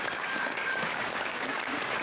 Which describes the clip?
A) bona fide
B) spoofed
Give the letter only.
B